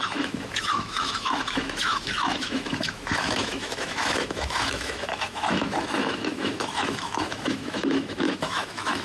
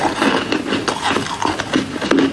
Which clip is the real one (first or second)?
second